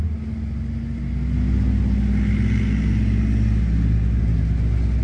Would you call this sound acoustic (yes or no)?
yes